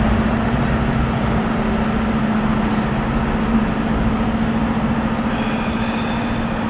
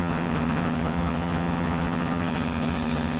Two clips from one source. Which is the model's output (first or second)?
second